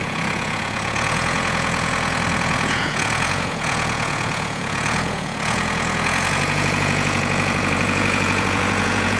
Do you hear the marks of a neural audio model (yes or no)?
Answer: yes